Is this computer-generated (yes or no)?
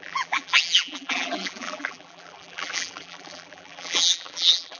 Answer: yes